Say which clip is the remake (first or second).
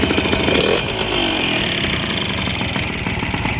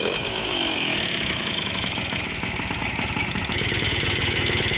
second